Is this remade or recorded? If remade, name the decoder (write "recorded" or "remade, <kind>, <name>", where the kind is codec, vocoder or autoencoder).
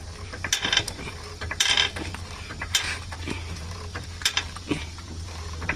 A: remade, vocoder, BigVGAN v2